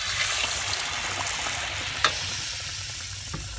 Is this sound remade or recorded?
recorded